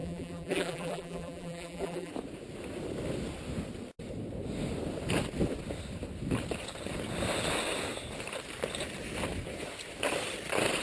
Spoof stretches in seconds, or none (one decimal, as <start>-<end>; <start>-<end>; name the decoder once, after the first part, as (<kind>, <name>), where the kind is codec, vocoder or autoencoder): 0.0-2.1 (vocoder, BigVGAN v2)